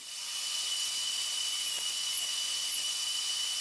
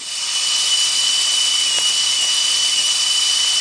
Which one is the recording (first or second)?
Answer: second